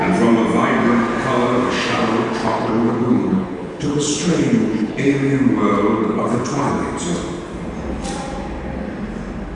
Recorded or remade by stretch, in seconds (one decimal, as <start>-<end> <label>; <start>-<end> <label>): 0.0-2.4 recorded; 2.4-4.9 remade; 4.9-6.0 recorded; 6.0-6.7 remade; 6.7-9.5 recorded